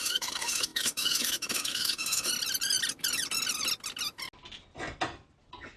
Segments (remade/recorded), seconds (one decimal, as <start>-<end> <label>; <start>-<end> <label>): 0.0-2.3 remade; 2.3-5.8 recorded